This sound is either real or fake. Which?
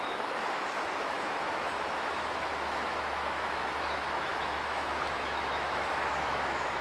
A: fake